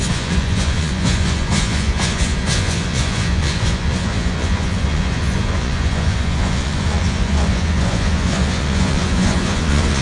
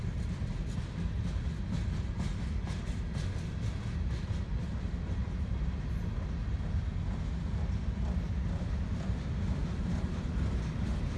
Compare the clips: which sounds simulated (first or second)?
first